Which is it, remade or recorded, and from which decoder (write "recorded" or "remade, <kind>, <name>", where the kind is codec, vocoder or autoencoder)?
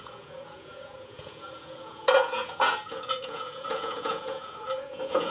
remade, vocoder, Vocos